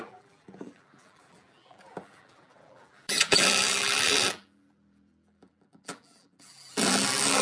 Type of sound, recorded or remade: remade